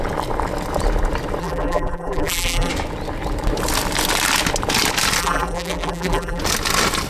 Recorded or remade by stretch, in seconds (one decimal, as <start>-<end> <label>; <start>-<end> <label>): 0.0-1.4 recorded; 1.4-2.7 remade; 2.7-5.2 recorded; 5.2-6.4 remade; 6.4-7.1 recorded